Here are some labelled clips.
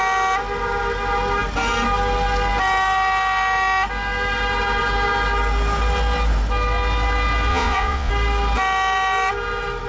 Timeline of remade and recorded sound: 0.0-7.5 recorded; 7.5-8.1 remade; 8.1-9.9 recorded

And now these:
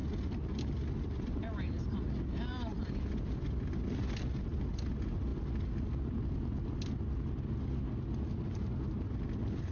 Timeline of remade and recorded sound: 0.0-2.7 recorded; 2.7-3.4 remade; 3.4-9.7 recorded

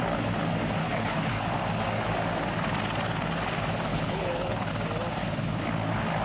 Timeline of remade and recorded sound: 0.0-0.8 recorded; 0.8-1.4 remade; 1.4-3.9 recorded; 3.9-4.7 remade; 4.7-6.2 recorded

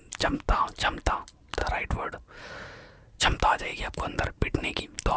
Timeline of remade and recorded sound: 0.0-1.6 recorded; 1.6-3.2 remade; 3.2-3.7 recorded; 3.7-4.8 remade; 4.8-5.2 recorded

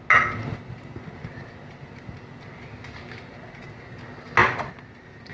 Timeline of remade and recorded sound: 0.0-5.3 recorded

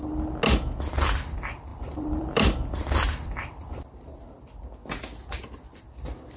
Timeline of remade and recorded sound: 0.0-1.7 recorded; 1.7-3.8 remade; 3.8-5.2 recorded; 5.2-5.8 remade; 5.8-6.4 recorded